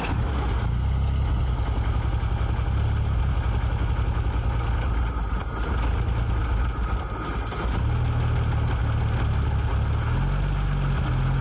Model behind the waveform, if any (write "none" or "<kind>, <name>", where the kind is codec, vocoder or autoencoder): none